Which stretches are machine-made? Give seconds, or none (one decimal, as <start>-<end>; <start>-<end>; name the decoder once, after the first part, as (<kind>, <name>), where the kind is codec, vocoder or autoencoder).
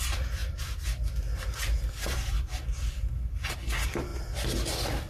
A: none